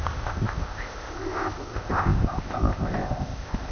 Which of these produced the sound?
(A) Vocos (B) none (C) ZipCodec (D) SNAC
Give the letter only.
C